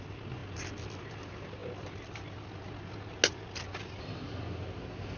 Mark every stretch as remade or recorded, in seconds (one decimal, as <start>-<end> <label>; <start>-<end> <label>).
0.0-5.2 recorded

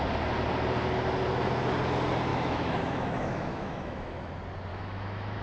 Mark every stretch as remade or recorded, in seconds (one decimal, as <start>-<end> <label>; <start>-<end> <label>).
0.0-2.3 recorded; 2.3-4.3 remade; 4.3-4.7 recorded; 4.7-5.4 remade

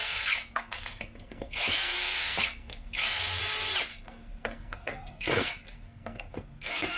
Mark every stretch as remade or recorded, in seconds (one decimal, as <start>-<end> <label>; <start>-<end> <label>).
0.0-3.4 remade; 3.4-3.9 recorded; 3.9-7.0 remade